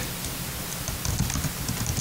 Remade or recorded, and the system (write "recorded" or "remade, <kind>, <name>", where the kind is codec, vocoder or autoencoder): recorded